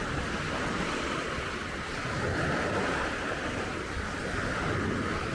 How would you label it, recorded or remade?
recorded